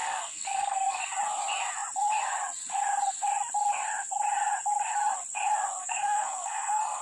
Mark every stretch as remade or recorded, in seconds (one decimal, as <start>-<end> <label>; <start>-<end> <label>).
0.0-1.1 remade; 1.1-5.8 recorded; 5.8-7.0 remade